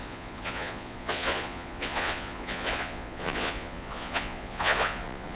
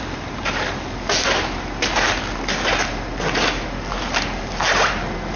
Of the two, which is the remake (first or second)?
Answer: first